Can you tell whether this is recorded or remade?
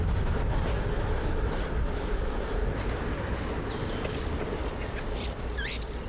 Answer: recorded